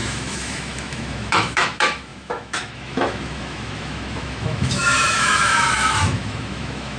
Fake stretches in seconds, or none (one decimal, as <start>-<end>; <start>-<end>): 0.0-7.0

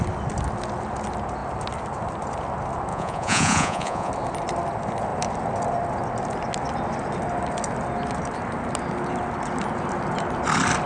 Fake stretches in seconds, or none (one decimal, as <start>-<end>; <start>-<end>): 2.9-4.1

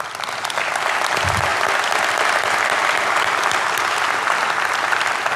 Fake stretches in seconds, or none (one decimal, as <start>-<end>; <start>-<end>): none

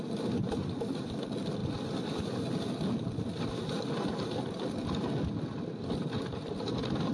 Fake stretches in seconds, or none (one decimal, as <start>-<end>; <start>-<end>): none